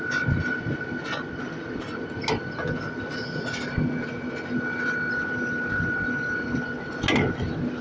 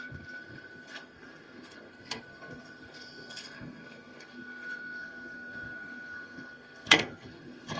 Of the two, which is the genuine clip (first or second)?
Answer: first